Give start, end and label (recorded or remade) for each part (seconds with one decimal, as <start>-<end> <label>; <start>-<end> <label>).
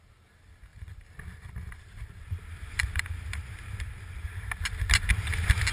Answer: 0.0-0.7 recorded; 0.7-4.1 remade; 4.1-5.7 recorded